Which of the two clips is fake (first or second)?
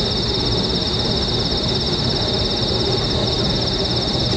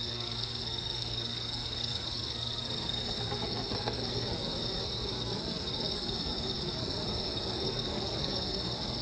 second